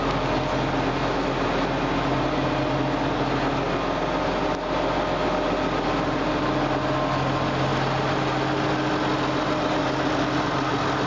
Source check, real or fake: real